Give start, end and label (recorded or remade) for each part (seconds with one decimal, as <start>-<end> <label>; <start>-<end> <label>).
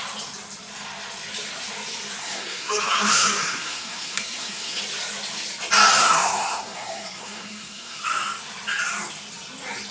0.0-2.2 recorded; 2.2-4.8 remade; 4.8-6.0 recorded; 6.0-8.0 remade; 8.0-9.9 recorded